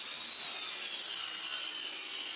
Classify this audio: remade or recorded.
recorded